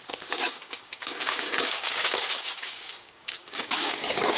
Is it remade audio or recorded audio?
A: remade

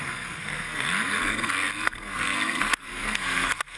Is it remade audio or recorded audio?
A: remade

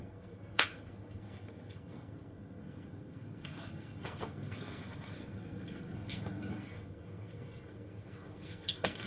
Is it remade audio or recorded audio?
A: remade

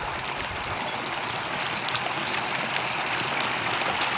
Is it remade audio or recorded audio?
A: recorded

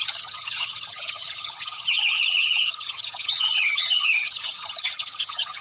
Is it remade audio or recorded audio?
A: remade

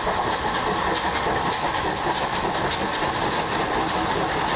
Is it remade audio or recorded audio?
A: recorded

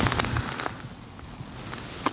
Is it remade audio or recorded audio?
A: recorded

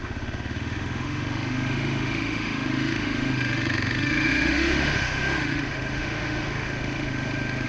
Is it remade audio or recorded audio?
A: remade